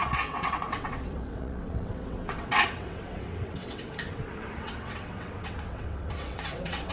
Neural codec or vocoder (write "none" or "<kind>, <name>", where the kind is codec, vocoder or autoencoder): vocoder, WaveNeXt